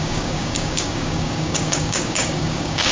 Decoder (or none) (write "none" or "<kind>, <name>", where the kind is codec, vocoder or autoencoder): codec, DAC